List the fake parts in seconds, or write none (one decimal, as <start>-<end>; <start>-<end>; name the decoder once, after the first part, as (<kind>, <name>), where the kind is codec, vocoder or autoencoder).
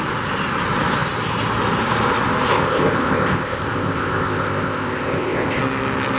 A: 2.5-5.6 (codec, ZipCodec)